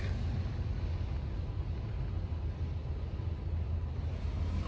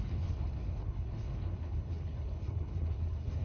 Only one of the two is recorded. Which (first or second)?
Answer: first